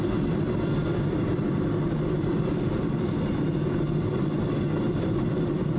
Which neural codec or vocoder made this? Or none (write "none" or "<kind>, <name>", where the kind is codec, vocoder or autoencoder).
none